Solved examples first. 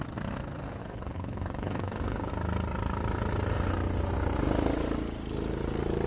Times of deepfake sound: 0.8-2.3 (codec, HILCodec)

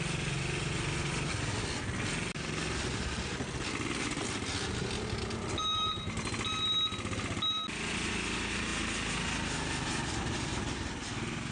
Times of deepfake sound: none